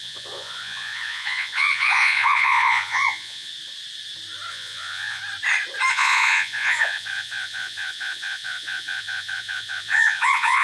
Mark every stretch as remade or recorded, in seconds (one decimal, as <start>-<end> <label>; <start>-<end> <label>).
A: 0.0-3.5 remade; 3.5-4.5 recorded; 4.5-5.2 remade; 5.2-5.9 recorded; 5.9-10.6 remade